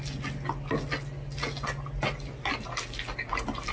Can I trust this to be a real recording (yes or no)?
yes